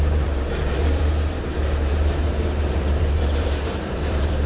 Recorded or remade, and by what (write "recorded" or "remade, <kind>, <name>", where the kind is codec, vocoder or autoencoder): remade, vocoder, BigVGAN v2